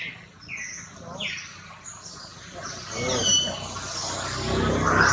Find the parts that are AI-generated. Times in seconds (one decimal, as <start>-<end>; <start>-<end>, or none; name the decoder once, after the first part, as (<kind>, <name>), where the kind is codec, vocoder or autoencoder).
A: none

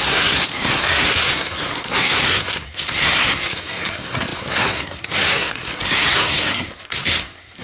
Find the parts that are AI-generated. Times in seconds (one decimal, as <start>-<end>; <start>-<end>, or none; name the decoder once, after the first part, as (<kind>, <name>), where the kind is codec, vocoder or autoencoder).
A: 0.0-7.6 (codec, SNAC)

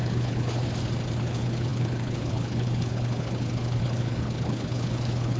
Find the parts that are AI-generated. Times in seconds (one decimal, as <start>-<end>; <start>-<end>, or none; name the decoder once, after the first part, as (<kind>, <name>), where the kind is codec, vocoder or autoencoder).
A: 0.0-0.6 (codec, HILCodec); 1.2-5.4

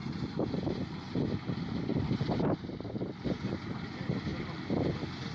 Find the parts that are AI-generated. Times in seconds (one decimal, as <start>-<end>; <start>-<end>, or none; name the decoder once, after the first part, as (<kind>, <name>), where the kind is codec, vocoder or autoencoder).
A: 1.9-3.5 (vocoder, BigVGAN v2)

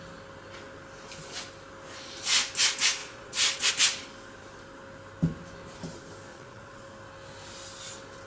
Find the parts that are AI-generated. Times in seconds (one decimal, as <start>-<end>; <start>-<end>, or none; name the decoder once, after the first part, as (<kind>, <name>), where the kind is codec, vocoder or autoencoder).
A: 3.0-3.7 (vocoder, Vocos); 6.3-6.9

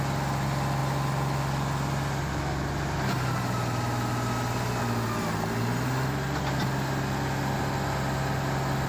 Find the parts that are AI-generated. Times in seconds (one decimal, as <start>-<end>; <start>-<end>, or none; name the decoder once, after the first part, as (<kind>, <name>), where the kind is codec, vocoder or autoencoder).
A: none

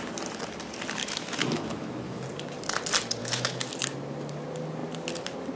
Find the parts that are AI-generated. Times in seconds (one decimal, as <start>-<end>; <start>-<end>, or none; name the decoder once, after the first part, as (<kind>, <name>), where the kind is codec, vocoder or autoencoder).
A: 1.0-2.2 (autoencoder, DAC-VAE); 3.2-3.7

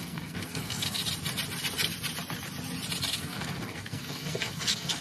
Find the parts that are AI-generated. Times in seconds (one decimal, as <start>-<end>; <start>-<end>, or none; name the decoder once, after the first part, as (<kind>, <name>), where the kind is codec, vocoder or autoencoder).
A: 0.0-1.0 (codec, SNAC); 3.1-5.0